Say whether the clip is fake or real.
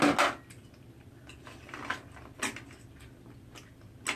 real